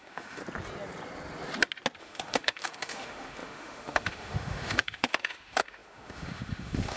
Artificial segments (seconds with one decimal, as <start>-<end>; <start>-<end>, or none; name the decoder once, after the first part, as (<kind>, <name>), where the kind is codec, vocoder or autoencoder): 0.0-0.4 (autoencoder, DAC-VAE); 2.0-7.0